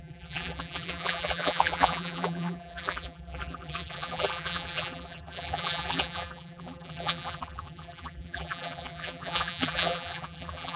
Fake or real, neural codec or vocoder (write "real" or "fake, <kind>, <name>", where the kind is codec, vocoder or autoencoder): fake, vocoder, BigVGAN v2